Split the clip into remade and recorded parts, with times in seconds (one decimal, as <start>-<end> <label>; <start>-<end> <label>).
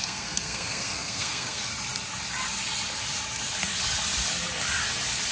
0.0-1.7 remade; 1.7-5.3 recorded